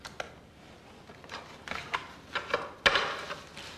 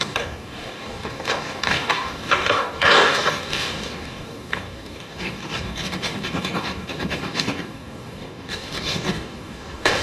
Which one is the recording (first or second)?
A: first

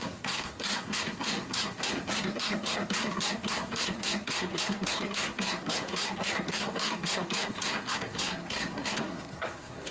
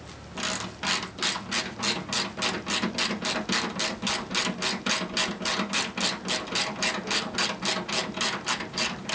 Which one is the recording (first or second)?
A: second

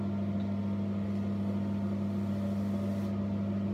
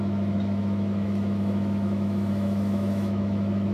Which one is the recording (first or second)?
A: first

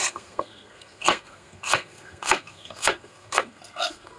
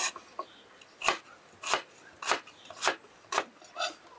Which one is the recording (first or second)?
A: second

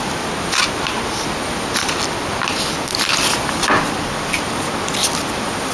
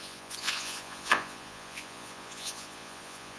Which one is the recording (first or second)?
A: first